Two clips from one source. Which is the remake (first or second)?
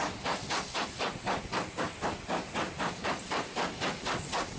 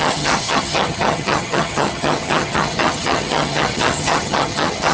second